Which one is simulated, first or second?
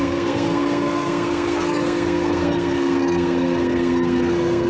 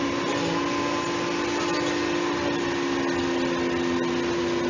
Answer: first